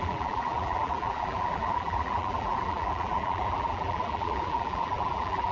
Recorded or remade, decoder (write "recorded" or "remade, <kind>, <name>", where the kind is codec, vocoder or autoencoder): remade, vocoder, BigVGAN v2